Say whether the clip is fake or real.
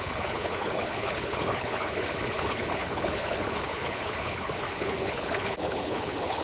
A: fake